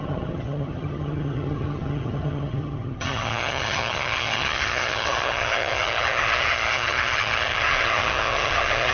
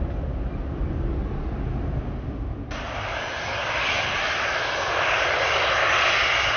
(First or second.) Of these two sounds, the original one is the second